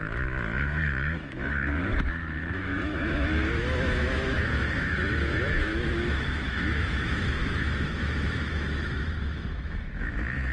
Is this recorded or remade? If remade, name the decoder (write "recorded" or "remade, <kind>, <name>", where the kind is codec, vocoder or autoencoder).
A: remade, autoencoder, DAC-VAE